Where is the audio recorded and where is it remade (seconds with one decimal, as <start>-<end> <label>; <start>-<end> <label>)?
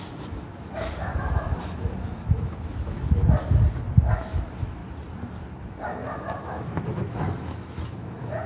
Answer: 0.0-3.2 remade; 3.2-4.1 recorded; 4.1-4.8 remade; 4.8-5.6 recorded; 5.6-8.5 remade